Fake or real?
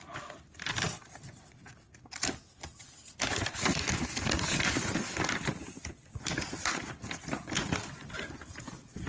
real